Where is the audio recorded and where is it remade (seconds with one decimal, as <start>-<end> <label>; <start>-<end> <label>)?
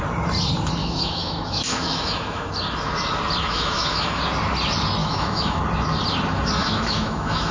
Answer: 0.0-0.8 recorded; 0.8-2.5 remade; 2.5-3.4 recorded; 3.4-4.2 remade; 4.2-5.0 recorded; 5.0-5.6 remade; 5.6-6.6 recorded; 6.6-7.5 remade